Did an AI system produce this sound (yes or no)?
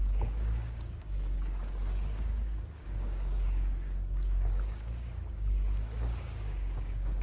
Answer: yes